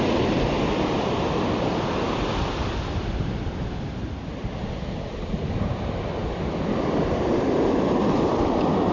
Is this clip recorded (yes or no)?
yes